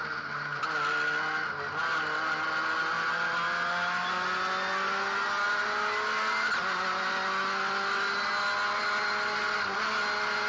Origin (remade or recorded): recorded